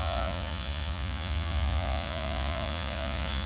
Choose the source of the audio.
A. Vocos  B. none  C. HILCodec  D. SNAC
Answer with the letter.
A